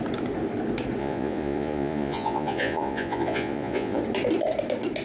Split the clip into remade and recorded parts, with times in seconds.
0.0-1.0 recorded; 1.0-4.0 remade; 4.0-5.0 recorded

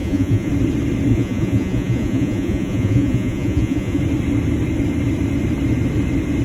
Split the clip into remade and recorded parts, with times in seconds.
0.0-0.5 remade; 0.5-1.1 recorded; 1.1-4.0 remade; 4.0-6.4 recorded

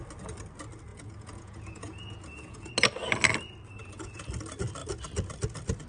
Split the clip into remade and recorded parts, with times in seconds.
0.0-0.9 recorded; 0.9-2.7 remade; 2.7-3.8 recorded; 3.8-4.3 remade; 4.3-5.9 recorded

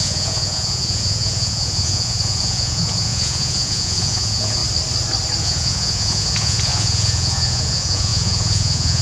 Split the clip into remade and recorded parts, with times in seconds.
0.0-4.6 remade; 4.6-5.4 recorded; 5.4-9.0 remade